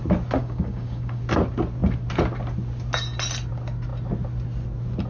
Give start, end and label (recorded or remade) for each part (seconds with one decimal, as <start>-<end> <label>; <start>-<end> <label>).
0.0-0.4 recorded; 0.4-1.2 remade; 1.2-5.1 recorded